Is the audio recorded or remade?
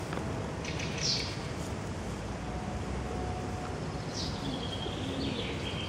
recorded